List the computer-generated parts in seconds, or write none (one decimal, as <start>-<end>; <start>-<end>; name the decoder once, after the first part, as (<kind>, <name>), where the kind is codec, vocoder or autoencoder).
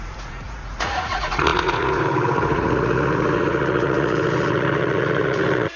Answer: 0.0-5.8 (vocoder, Vocos)